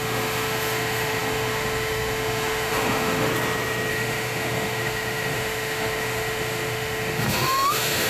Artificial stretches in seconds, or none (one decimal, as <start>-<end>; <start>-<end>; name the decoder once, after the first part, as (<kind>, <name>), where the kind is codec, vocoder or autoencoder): 0.0-3.3 (autoencoder, DAC-VAE); 3.9-8.1